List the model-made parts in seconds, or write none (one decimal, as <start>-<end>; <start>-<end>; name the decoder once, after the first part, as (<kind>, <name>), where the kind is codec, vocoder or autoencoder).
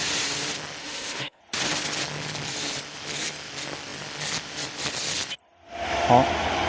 0.8-1.4 (autoencoder, DAC-VAE)